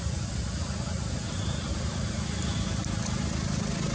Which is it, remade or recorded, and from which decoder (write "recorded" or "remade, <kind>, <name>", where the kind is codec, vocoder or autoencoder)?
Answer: recorded